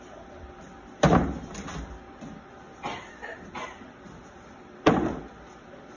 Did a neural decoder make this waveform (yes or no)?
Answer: no